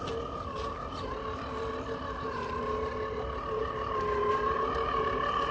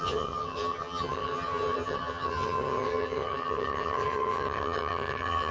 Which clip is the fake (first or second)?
second